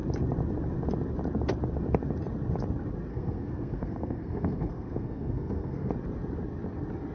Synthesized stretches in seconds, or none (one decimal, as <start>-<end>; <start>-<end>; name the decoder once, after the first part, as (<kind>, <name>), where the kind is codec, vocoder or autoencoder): 3.1-5.9 (codec, SNAC)